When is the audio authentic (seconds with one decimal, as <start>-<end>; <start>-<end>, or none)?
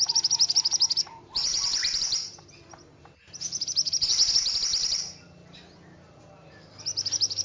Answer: 0.0-7.4